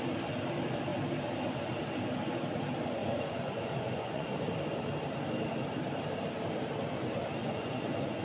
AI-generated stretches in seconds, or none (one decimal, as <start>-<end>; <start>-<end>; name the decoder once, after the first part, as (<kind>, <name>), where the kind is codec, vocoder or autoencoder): 3.0-4.3 (vocoder, Vocos); 7.4-8.2